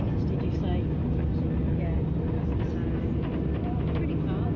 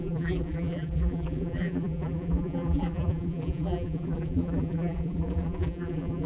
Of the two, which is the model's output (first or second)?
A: second